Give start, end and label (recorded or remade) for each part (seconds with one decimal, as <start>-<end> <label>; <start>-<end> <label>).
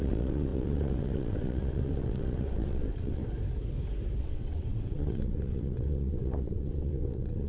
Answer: 0.0-3.2 remade; 3.2-4.2 recorded; 4.2-7.5 remade